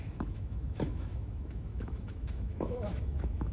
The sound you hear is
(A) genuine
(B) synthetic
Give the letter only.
B